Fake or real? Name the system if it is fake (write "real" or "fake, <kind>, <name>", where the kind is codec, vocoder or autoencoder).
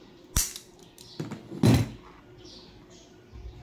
real